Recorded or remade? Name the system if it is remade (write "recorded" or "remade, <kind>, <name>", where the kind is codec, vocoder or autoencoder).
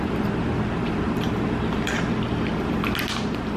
recorded